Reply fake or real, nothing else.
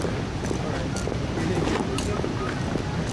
real